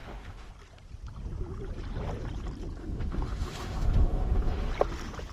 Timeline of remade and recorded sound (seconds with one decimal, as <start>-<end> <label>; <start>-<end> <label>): 0.0-0.5 remade; 0.5-2.8 recorded; 2.8-4.7 remade; 4.7-5.3 recorded